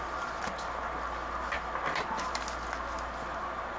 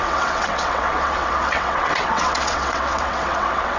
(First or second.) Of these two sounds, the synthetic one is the second